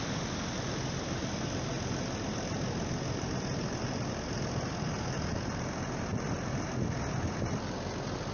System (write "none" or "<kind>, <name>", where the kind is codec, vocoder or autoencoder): none